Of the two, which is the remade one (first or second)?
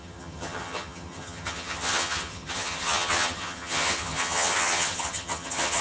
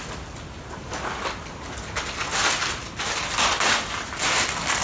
first